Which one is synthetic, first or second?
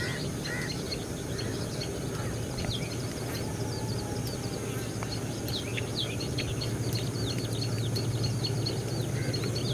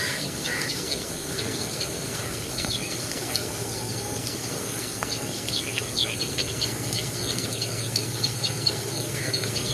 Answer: second